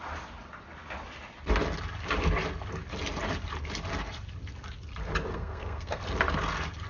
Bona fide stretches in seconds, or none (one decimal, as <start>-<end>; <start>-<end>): 0.0-5.3; 6.0-6.9